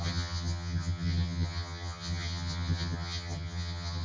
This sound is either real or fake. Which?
fake